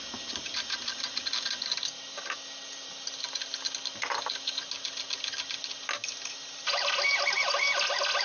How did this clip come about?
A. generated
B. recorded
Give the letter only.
B